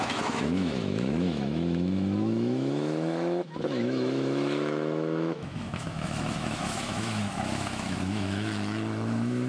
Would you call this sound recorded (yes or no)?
no